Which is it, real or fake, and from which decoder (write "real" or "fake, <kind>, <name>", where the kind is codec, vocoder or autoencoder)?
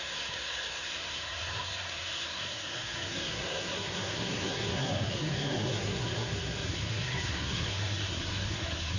fake, codec, SNAC